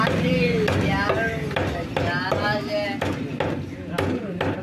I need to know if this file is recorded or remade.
recorded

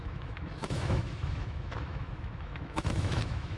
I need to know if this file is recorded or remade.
remade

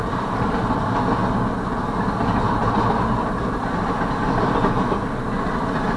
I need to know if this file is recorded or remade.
recorded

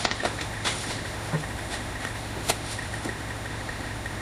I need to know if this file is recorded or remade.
remade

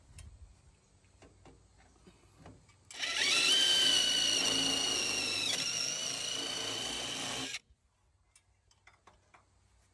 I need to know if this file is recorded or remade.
recorded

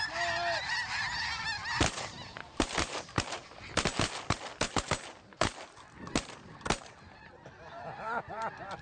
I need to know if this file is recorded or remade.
recorded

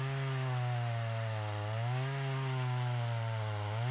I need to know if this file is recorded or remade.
recorded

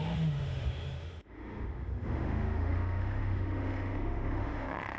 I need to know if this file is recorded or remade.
remade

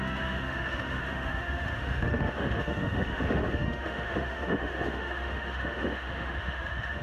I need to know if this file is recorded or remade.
remade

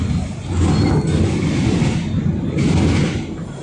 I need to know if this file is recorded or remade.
recorded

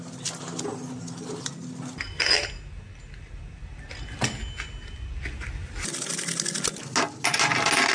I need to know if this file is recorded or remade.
recorded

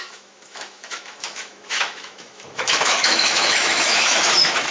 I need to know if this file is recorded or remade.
remade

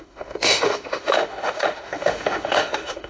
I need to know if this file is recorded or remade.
remade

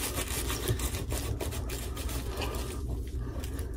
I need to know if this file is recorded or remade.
recorded